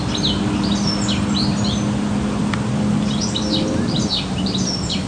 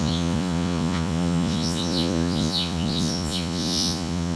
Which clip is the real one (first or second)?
first